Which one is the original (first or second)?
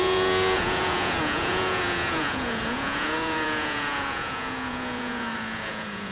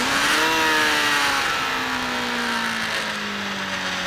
second